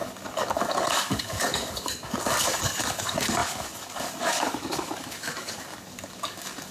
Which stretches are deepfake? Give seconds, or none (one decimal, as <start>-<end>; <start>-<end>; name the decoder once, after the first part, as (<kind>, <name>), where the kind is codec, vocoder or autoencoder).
0.0-6.7 (codec, DAC)